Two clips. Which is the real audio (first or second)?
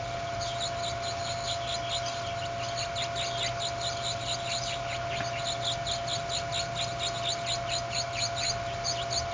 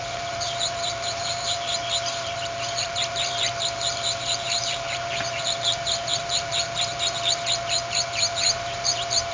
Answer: first